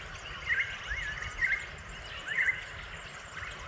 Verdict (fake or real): real